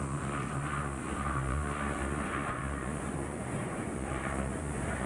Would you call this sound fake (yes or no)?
yes